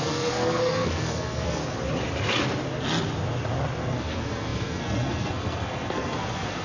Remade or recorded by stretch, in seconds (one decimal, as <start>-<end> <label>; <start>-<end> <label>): 0.0-1.6 remade; 1.6-3.8 recorded; 3.8-6.6 remade